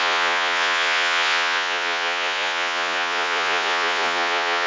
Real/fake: fake